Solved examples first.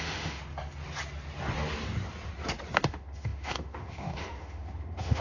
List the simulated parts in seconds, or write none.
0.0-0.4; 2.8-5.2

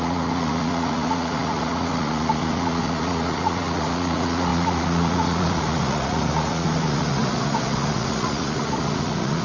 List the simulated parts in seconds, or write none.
0.0-9.4

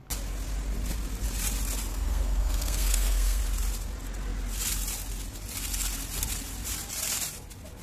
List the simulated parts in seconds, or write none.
1.9-3.4